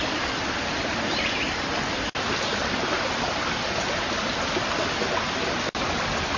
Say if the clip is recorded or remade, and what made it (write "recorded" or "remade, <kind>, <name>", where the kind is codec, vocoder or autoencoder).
recorded